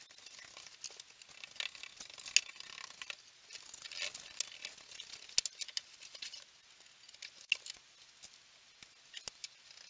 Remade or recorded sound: recorded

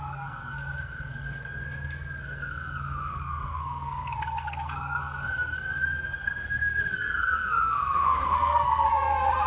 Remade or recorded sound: remade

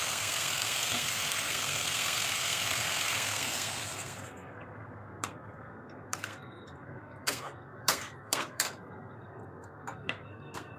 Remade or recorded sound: remade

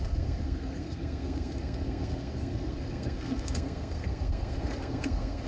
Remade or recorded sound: remade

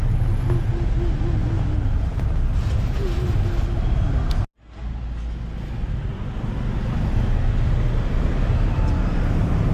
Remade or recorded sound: recorded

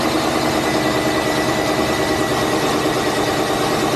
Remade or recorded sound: recorded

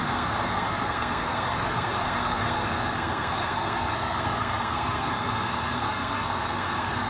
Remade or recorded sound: remade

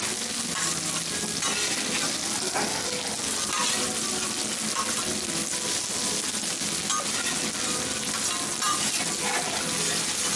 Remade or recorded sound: recorded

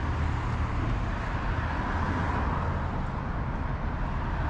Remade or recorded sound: recorded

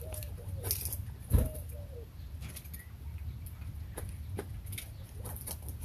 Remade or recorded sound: recorded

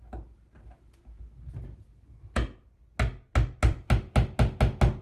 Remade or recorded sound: recorded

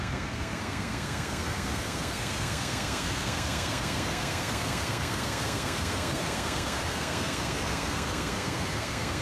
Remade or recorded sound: remade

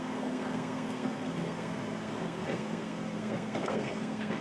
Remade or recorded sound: remade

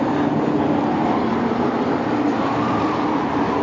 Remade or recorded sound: recorded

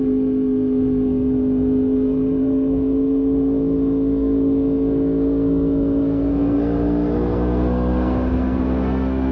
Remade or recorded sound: remade